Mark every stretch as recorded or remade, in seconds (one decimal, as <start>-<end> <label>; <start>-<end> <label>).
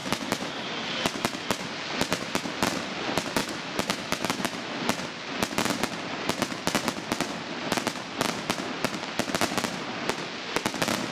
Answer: 0.0-0.7 remade; 0.7-3.4 recorded; 3.4-4.8 remade; 4.8-11.1 recorded